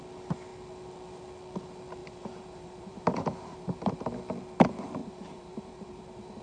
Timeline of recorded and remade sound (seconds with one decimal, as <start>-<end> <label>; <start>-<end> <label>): 0.0-2.0 recorded; 2.0-3.9 remade; 3.9-5.0 recorded; 5.0-6.4 remade